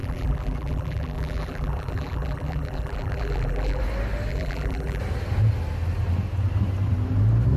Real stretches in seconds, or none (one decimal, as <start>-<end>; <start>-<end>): 3.8-4.3; 5.0-7.6